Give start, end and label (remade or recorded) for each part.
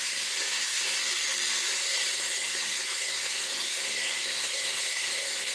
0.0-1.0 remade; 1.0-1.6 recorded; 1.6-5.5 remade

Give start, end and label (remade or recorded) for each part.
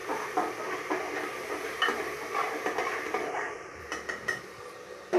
0.0-2.8 recorded; 2.8-4.4 remade; 4.4-5.2 recorded